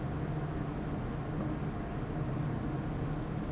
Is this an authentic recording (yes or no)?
yes